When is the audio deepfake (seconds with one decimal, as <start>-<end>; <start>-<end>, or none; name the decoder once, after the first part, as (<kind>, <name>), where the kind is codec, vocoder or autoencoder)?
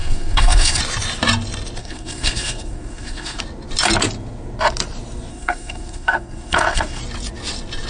0.0-0.8 (codec, SNAC); 1.8-3.4; 5.3-7.0